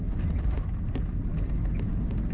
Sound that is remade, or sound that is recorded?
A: recorded